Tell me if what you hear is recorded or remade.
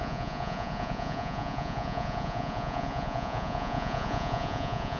remade